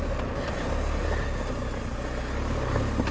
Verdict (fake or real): real